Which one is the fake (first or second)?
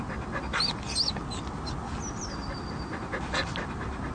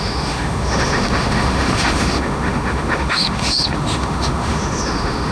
second